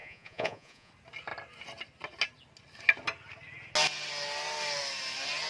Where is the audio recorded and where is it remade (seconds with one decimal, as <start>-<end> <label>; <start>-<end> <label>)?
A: 0.0-0.9 remade; 0.9-5.5 recorded